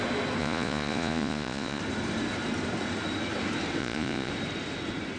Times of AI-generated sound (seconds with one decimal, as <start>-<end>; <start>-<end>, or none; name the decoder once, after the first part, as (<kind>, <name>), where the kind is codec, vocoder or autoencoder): 0.4-1.8 (vocoder, Vocos); 3.8-4.3

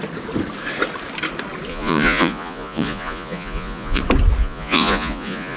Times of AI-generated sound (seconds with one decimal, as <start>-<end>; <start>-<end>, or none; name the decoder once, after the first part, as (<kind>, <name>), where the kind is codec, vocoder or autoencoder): 1.7-4.0 (vocoder, Vocos); 4.4-5.6

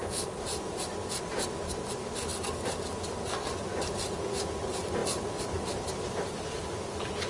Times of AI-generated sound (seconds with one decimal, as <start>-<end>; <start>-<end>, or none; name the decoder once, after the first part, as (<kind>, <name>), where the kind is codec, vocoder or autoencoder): none